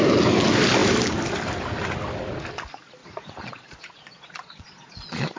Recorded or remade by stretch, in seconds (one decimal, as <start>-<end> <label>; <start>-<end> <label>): 0.0-3.0 recorded; 3.0-5.4 remade